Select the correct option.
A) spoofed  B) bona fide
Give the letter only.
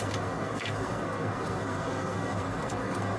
A